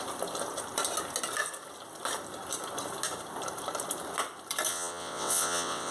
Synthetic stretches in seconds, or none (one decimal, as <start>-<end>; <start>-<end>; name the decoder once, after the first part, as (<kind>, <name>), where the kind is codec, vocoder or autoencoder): 4.7-5.9 (vocoder, WaveNeXt)